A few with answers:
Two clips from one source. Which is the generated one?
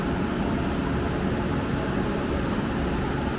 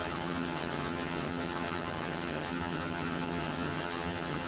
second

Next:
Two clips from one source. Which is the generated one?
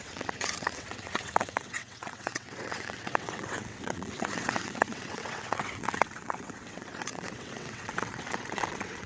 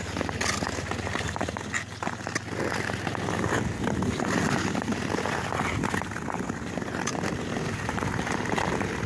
first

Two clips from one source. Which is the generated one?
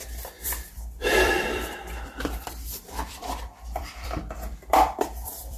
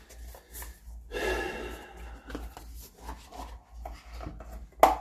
first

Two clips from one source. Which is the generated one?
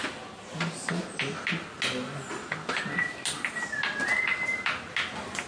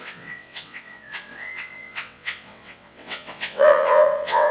second